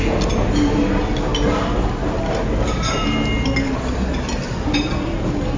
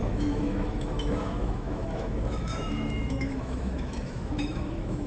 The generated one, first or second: second